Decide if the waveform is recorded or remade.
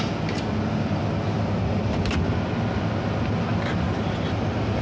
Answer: recorded